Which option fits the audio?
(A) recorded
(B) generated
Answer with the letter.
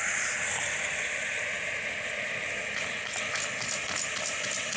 A